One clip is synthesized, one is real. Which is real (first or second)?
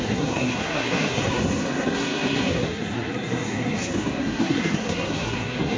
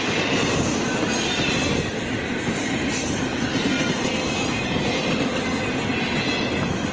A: second